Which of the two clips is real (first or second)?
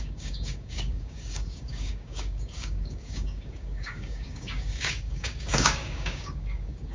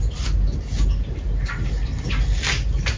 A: second